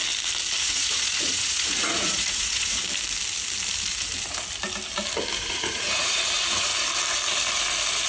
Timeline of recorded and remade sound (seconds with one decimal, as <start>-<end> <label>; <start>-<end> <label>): 0.0-0.6 recorded; 0.6-2.8 remade; 2.8-5.4 recorded; 5.4-6.7 remade; 6.7-8.1 recorded